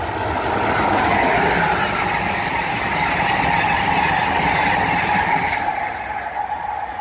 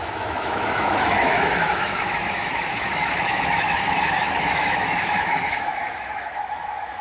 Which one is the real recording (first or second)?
first